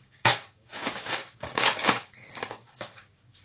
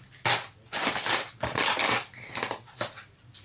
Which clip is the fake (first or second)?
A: first